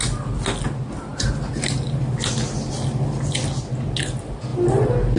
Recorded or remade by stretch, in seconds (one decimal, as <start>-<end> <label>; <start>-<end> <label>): 0.0-5.2 recorded